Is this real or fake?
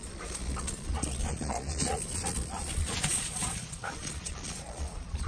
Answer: fake